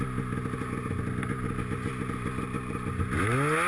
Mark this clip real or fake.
real